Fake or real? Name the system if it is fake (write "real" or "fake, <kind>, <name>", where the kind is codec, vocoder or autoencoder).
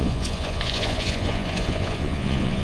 fake, vocoder, Vocos